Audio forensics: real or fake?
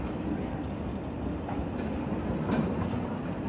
real